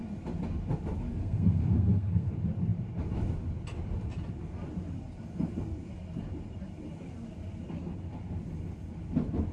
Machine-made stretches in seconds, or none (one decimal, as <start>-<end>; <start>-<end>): 1.2-2.3